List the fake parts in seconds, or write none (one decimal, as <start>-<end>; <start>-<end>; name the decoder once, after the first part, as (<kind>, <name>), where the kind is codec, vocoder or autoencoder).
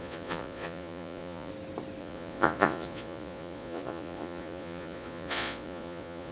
0.0-1.5 (vocoder, Vocos); 2.0-6.3